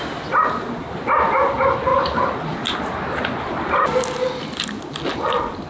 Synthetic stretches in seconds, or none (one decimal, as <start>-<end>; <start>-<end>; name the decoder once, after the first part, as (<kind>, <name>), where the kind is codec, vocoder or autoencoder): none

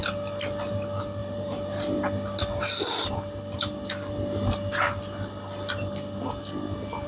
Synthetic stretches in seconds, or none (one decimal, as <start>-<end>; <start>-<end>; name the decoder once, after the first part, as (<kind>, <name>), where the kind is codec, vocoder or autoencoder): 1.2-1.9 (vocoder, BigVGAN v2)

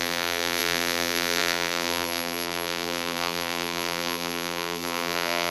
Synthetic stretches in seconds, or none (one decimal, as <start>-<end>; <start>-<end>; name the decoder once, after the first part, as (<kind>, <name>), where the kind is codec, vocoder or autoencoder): 0.0-5.5 (vocoder, BigVGAN v2)

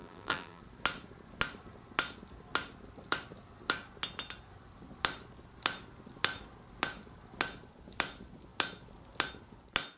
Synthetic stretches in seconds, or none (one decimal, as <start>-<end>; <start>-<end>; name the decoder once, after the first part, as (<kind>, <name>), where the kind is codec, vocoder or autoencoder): 0.0-0.6 (vocoder, BigVGAN v2)

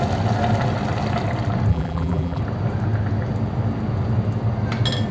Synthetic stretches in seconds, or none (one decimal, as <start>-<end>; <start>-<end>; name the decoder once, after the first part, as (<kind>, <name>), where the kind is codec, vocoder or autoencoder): 1.7-2.4 (vocoder, BigVGAN v2)

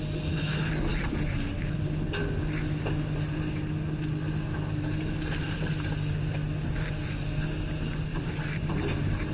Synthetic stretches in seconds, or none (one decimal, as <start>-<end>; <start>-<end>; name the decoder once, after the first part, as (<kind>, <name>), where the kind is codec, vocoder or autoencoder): 0.9-1.8 (vocoder, BigVGAN v2); 8.1-8.7

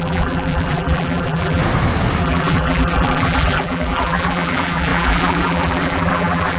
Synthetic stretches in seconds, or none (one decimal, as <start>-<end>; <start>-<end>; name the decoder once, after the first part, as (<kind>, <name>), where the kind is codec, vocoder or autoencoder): 0.0-1.6 (vocoder, BigVGAN v2); 2.2-6.6